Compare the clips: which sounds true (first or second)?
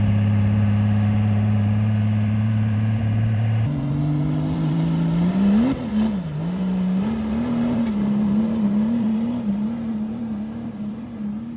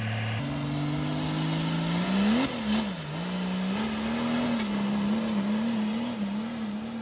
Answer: second